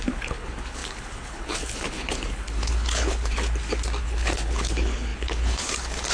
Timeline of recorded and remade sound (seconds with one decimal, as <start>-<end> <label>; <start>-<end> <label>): 0.0-3.3 remade; 3.3-4.0 recorded; 4.0-6.1 remade